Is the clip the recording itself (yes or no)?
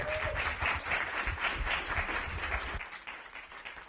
yes